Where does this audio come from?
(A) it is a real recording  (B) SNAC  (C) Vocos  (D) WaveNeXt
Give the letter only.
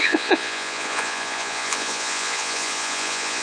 C